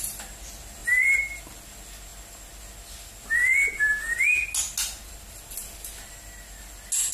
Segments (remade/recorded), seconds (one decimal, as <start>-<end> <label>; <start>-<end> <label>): 0.0-0.8 recorded; 0.8-1.4 remade; 1.4-7.1 recorded